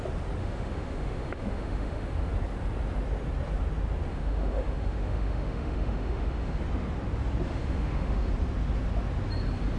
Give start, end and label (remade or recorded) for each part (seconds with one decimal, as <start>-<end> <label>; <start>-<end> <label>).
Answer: 0.0-0.4 recorded; 0.4-2.3 remade; 2.3-4.1 recorded; 4.1-6.6 remade; 6.6-7.5 recorded; 7.5-8.3 remade; 8.3-9.8 recorded